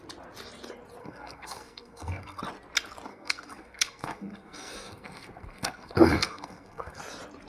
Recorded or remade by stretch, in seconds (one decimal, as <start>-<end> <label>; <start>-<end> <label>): 0.0-1.0 recorded; 1.0-2.4 remade; 2.4-3.1 recorded; 3.1-7.0 remade; 7.0-7.5 recorded